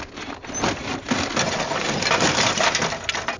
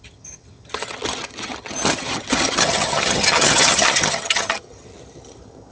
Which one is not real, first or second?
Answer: second